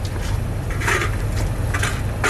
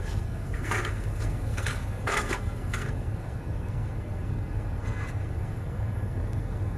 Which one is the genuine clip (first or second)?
first